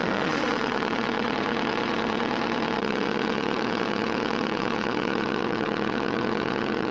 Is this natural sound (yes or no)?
no